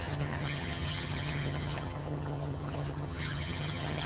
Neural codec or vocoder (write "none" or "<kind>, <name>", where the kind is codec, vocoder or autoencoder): vocoder, HiFi-GAN